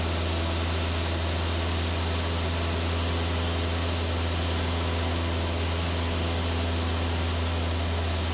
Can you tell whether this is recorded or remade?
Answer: recorded